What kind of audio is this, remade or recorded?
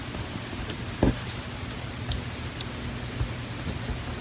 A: recorded